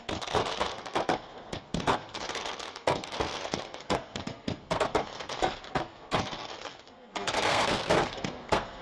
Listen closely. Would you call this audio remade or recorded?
remade